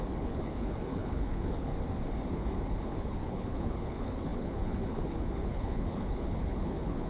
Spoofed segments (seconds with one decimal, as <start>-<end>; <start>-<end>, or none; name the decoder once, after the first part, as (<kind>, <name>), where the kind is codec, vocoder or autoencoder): 0.0-1.7 (codec, HILCodec); 2.3-7.1